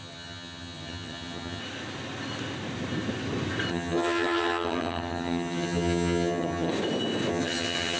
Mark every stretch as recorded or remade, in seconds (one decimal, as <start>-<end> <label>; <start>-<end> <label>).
0.0-1.6 remade; 1.6-3.7 recorded; 3.7-6.7 remade; 6.7-7.3 recorded; 7.3-8.0 remade